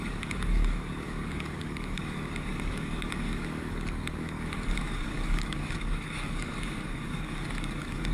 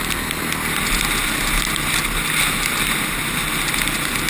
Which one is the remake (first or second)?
first